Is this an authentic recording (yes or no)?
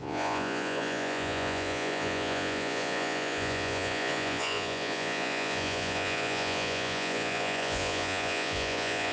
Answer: no